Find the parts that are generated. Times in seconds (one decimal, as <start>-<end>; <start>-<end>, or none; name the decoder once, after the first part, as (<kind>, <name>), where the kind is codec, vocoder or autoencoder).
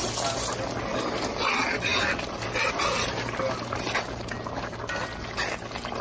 none